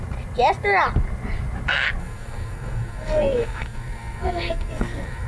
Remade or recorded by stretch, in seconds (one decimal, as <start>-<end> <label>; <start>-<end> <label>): 0.0-2.0 recorded; 2.0-5.3 remade